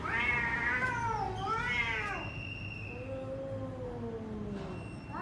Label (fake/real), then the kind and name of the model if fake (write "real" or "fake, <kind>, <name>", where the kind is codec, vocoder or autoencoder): real